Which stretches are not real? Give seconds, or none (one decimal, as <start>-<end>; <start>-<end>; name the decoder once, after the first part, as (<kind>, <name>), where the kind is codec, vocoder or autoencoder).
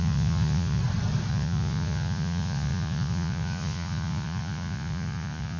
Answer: 0.0-0.8 (vocoder, Vocos); 1.3-5.6